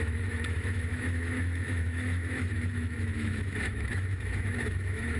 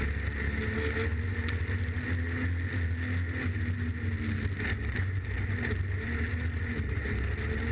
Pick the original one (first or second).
second